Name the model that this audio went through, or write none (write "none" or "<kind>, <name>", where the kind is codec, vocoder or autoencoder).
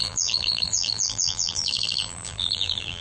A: vocoder, BigVGAN v2